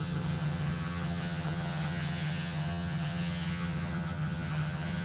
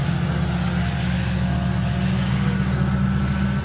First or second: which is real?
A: second